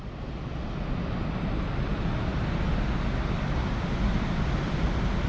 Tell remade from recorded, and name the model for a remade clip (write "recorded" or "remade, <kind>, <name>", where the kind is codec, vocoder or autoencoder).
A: recorded